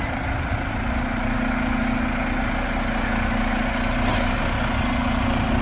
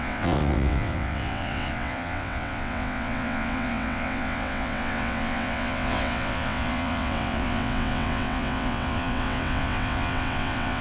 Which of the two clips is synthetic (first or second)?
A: second